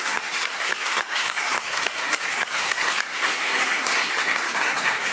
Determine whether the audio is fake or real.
fake